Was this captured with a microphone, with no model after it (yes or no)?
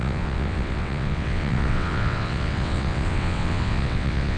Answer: no